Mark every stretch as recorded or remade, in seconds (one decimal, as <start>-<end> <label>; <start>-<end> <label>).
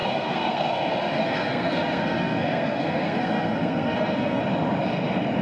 0.0-0.7 remade; 0.7-1.2 recorded; 1.2-4.4 remade; 4.4-5.4 recorded